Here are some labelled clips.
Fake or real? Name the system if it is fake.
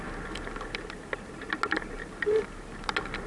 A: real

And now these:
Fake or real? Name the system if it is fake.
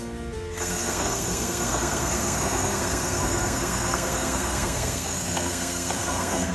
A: fake, codec, SNAC